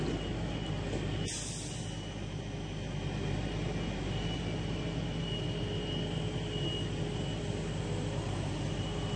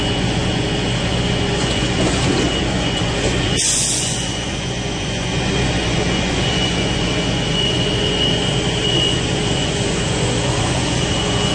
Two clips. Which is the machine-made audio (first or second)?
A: second